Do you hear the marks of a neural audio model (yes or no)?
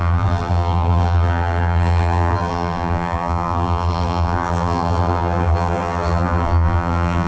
yes